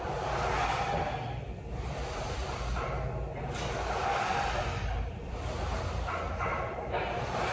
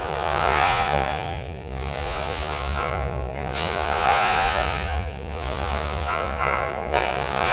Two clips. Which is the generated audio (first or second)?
second